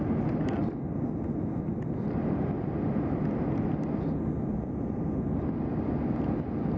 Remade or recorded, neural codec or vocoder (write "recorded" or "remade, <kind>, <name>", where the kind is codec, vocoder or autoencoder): recorded